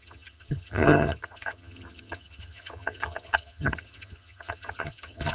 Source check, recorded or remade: remade